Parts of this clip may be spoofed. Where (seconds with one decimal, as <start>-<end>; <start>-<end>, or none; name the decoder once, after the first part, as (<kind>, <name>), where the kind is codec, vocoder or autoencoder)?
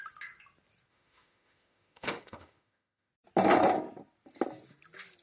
0.9-3.1 (autoencoder, DAC-VAE)